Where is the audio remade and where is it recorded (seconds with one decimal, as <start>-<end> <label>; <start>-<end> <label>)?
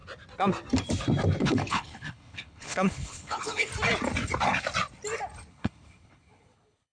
0.0-1.4 recorded; 1.4-3.7 remade; 3.7-5.5 recorded; 5.5-6.9 remade